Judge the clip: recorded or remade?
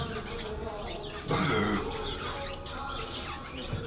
recorded